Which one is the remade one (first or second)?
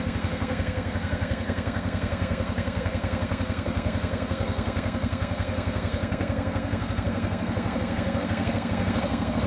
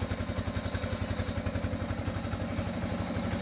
first